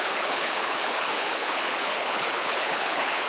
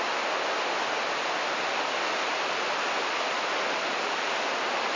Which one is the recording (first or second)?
second